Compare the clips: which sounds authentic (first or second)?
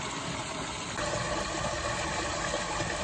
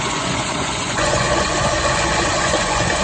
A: first